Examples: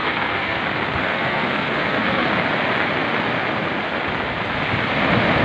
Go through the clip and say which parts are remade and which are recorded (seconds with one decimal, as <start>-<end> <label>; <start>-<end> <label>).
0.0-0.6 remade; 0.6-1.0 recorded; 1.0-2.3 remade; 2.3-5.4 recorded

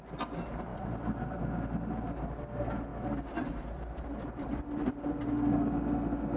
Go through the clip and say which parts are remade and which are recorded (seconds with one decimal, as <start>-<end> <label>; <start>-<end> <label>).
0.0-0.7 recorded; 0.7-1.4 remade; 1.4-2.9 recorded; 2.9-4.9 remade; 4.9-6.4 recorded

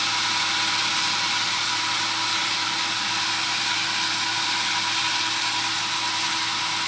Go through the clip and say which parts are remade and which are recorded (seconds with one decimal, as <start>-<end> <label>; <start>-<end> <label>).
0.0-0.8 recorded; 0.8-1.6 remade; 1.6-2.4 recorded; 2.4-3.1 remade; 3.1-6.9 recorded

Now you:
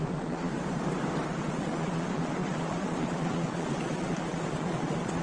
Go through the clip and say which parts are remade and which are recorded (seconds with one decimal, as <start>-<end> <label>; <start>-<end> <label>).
0.0-0.5 remade; 0.5-1.6 recorded; 1.6-5.2 remade

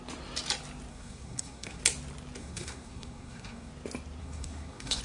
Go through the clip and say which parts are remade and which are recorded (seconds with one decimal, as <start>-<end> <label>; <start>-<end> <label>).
0.0-0.9 recorded; 0.9-1.8 remade; 1.8-2.4 recorded; 2.4-3.7 remade; 3.7-4.2 recorded; 4.2-5.0 remade

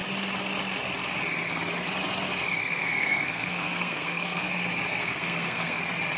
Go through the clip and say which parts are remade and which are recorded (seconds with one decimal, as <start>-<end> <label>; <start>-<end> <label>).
0.0-2.6 recorded; 2.6-4.5 remade; 4.5-4.9 recorded; 4.9-5.8 remade; 5.8-6.2 recorded